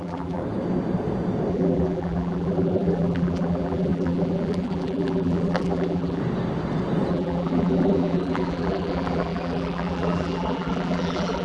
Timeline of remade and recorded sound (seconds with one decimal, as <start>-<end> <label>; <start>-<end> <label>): 0.0-0.4 remade; 0.4-1.5 recorded; 1.5-6.2 remade; 6.2-7.1 recorded; 7.1-11.4 remade